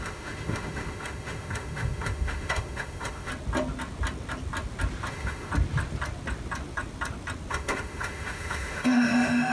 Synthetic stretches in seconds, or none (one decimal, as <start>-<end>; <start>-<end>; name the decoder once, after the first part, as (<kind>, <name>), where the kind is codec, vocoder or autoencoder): 0.0-3.3 (autoencoder, DAC-VAE); 5.1-5.5; 7.5-9.5